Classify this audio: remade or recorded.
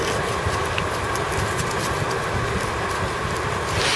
recorded